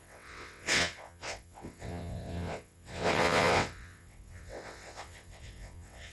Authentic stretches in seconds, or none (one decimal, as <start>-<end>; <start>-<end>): none